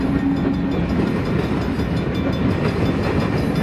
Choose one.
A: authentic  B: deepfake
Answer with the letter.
A